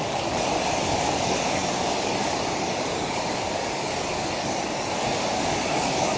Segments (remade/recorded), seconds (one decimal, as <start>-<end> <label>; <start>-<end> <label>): 0.0-6.2 remade